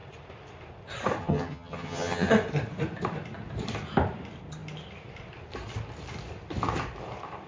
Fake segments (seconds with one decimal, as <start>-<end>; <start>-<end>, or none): 1.2-2.3